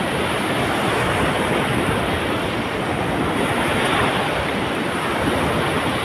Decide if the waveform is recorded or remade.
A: recorded